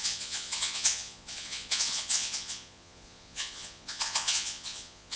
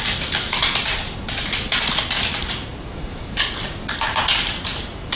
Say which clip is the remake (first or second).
first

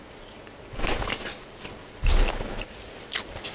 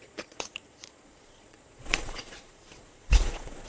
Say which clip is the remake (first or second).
second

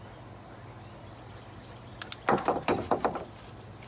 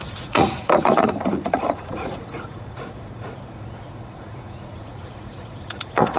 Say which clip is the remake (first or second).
second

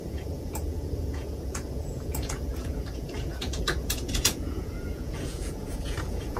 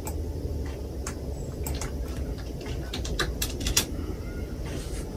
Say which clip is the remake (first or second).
first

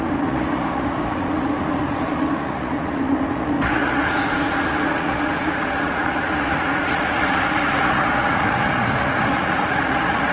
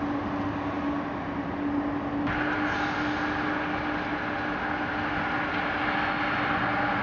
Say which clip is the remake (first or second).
first